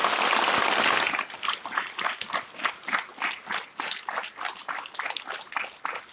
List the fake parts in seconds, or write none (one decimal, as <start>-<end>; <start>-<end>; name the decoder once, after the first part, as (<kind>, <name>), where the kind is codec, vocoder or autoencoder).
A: none